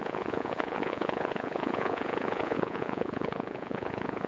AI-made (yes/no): yes